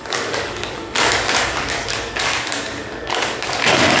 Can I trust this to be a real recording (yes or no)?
no